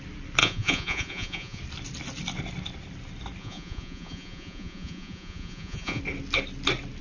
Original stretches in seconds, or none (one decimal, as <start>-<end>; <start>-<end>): 0.0-0.4; 1.6-3.4; 6.0-7.0